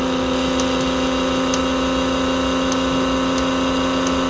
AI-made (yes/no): no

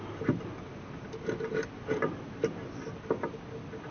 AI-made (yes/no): no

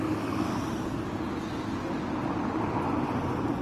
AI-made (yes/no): no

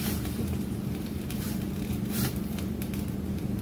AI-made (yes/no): yes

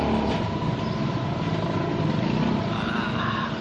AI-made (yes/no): no